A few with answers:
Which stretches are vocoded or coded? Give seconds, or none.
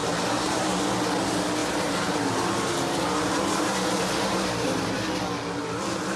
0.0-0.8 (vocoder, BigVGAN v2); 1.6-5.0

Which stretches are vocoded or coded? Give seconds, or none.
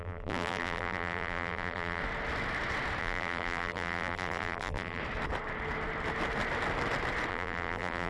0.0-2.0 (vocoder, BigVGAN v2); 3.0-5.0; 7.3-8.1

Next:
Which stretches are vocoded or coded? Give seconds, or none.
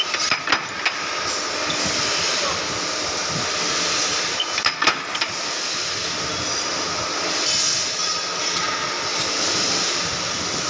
none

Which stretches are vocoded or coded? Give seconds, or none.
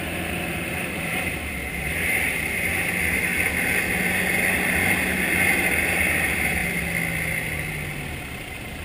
0.0-3.3 (vocoder, BigVGAN v2); 5.8-6.6; 8.3-8.8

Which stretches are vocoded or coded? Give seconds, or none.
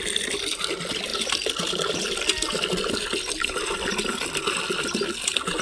none